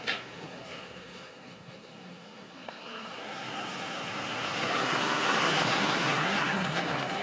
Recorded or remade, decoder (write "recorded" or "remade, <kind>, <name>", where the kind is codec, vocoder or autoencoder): remade, codec, SNAC